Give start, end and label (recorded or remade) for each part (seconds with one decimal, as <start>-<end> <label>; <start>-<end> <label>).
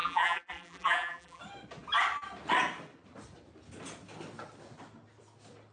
0.0-1.4 remade; 1.4-5.7 recorded